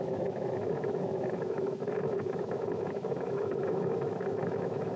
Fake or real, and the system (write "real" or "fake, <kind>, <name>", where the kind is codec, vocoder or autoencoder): fake, autoencoder, DAC-VAE